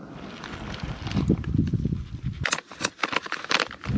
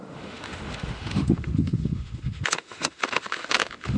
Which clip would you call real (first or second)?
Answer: first